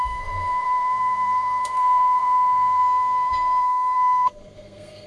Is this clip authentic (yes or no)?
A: no